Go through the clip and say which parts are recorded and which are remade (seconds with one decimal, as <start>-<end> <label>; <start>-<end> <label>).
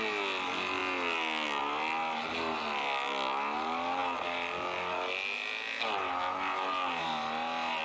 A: 0.0-7.8 recorded